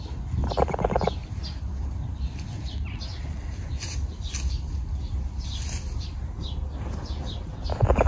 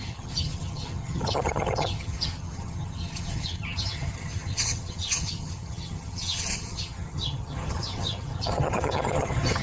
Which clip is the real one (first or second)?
first